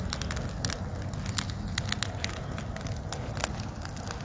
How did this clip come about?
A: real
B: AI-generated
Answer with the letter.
A